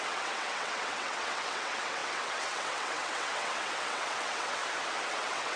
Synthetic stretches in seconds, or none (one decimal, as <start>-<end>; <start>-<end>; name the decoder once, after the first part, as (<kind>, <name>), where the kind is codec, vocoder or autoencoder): 0.0-4.6 (vocoder, WaveNeXt); 5.1-5.6